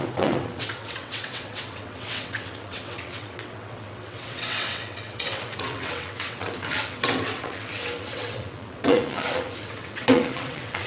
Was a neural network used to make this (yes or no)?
yes